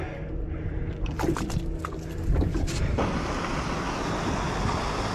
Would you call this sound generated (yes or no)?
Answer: no